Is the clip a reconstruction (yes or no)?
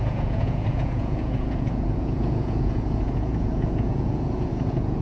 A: yes